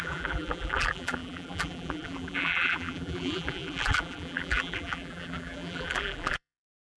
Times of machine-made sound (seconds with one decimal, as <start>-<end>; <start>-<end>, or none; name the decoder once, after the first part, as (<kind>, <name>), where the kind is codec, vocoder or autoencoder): 0.0-7.0 (vocoder, BigVGAN v2)